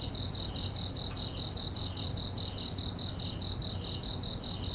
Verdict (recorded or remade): recorded